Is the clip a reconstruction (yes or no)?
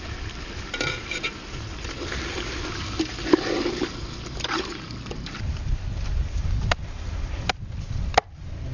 yes